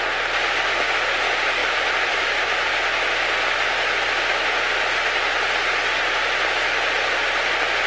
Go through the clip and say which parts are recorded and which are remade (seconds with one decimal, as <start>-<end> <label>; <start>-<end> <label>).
0.0-1.6 recorded; 1.6-2.7 remade; 2.7-7.9 recorded